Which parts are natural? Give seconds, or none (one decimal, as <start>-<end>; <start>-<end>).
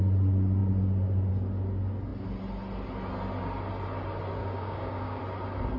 0.0-4.4; 5.2-5.8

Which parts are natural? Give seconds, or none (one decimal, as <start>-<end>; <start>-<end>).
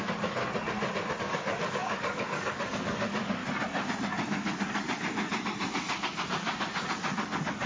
0.4-1.2; 3.4-7.7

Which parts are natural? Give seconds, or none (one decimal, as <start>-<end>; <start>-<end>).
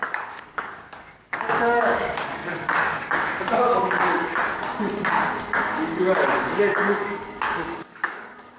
4.4-5.6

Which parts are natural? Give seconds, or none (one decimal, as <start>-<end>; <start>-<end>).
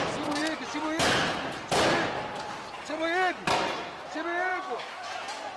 0.0-4.5; 5.1-5.6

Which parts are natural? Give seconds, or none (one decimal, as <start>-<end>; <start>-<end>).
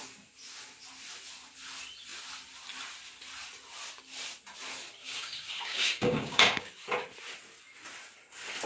0.0-5.0; 6.7-8.7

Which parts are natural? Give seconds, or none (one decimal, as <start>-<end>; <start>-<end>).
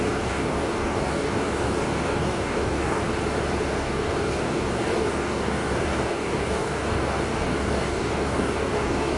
3.0-3.7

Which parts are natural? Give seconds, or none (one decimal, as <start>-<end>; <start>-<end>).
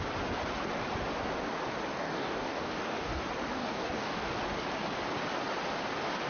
0.0-1.9; 3.2-3.6; 4.4-6.3